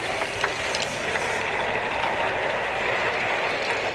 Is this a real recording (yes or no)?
yes